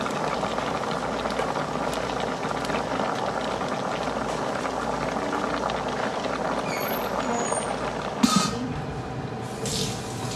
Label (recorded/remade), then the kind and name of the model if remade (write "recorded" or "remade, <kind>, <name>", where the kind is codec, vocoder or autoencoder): recorded